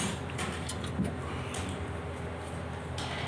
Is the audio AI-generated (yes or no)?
no